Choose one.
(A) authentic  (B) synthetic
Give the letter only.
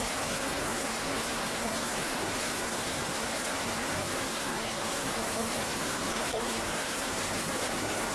B